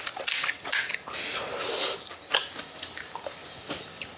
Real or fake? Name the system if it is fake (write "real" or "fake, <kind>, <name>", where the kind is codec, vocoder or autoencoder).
real